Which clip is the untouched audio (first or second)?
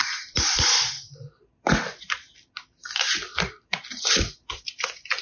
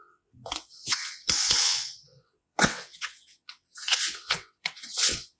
first